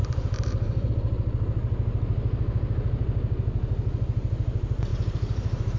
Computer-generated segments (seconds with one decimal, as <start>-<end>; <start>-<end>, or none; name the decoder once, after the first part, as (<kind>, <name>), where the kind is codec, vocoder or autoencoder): 0.0-0.9 (vocoder, BigVGAN v2); 4.9-5.8